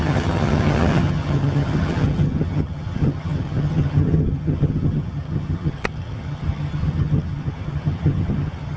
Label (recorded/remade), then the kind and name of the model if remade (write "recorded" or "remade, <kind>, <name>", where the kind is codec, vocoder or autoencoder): remade, vocoder, HiFi-GAN